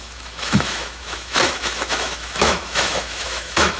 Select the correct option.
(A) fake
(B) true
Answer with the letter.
A